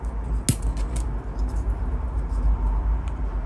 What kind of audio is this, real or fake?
real